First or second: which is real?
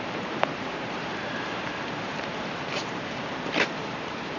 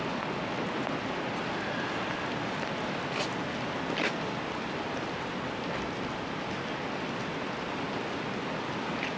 second